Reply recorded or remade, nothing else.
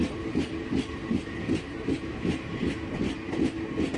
recorded